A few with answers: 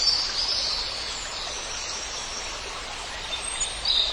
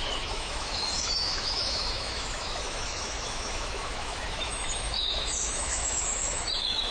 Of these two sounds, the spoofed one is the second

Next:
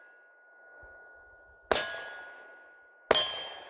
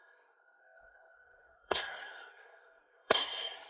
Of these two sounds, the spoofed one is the second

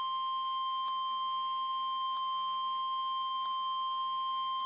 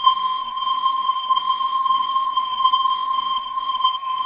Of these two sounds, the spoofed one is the second